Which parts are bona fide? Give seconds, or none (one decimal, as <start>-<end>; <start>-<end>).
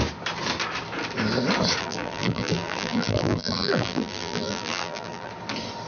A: 0.0-1.8; 5.3-5.9